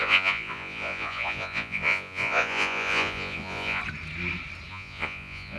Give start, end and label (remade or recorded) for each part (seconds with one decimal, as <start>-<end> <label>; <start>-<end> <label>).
0.0-3.8 remade; 3.8-4.7 recorded; 4.7-5.6 remade